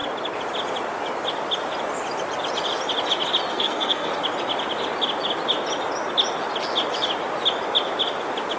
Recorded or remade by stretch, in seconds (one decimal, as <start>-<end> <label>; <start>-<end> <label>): 0.0-3.5 recorded; 3.5-4.1 remade; 4.1-8.6 recorded